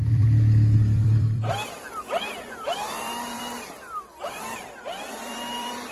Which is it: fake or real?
fake